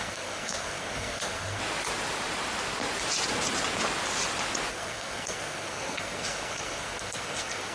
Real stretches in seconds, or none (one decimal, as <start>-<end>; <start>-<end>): 1.6-4.7